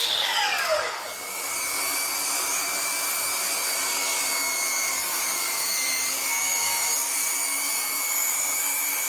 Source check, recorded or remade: remade